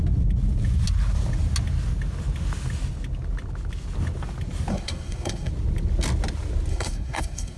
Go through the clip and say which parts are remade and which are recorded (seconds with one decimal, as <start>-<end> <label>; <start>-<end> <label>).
0.0-4.7 recorded; 4.7-5.5 remade; 5.5-6.7 recorded; 6.7-7.6 remade